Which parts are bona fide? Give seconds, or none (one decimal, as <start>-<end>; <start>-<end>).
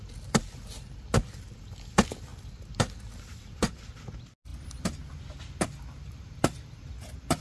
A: 0.0-7.4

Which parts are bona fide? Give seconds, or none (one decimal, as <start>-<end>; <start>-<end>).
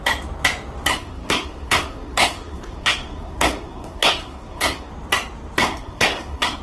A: 0.0-0.9; 4.9-5.6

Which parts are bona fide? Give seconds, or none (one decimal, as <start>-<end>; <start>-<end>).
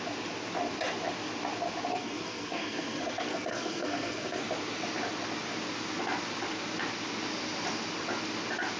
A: 0.0-1.9; 4.4-8.8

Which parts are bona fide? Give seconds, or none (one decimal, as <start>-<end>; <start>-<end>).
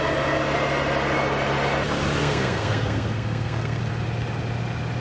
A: 0.0-2.2; 3.8-5.0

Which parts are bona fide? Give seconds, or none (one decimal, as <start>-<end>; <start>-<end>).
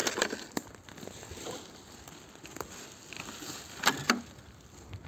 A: 0.0-5.1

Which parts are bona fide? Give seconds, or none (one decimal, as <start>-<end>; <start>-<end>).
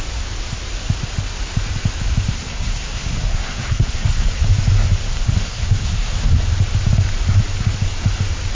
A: 0.0-2.3; 4.4-5.1; 6.4-8.5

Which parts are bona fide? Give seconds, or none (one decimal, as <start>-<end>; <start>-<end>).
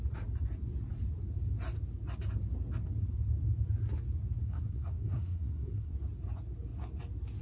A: 0.0-4.4; 5.9-7.4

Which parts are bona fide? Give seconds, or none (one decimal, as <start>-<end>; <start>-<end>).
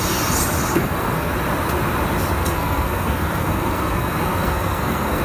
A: 0.0-0.7; 1.3-2.4